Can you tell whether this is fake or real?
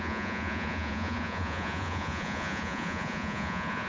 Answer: fake